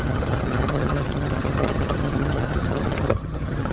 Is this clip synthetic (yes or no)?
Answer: yes